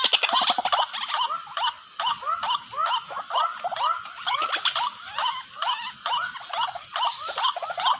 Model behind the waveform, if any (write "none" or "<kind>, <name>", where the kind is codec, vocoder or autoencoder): none